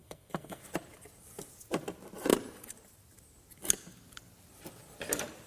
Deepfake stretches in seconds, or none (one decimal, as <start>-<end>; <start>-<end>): 0.0-0.6